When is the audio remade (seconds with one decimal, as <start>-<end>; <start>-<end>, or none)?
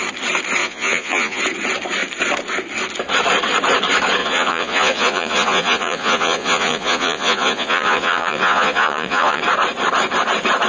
0.6-1.4; 4.2-9.4